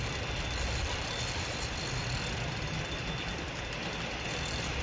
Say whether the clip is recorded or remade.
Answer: recorded